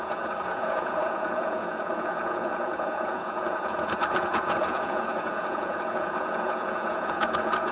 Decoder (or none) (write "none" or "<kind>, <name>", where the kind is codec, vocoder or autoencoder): vocoder, Vocos